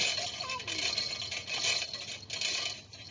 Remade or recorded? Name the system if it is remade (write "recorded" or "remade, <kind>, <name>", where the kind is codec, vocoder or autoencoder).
recorded